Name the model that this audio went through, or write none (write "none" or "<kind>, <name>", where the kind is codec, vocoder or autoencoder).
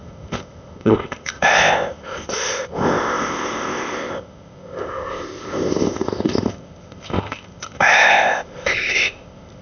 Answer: codec, ZipCodec